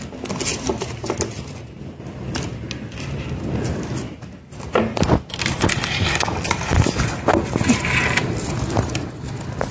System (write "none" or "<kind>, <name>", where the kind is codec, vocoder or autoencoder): none